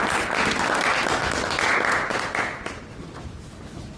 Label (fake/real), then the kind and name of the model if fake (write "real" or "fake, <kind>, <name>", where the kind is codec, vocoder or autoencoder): real